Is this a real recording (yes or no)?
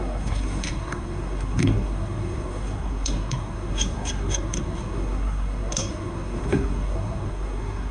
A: no